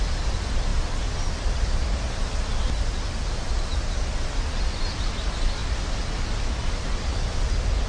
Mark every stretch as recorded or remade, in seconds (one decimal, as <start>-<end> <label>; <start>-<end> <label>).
0.0-7.9 recorded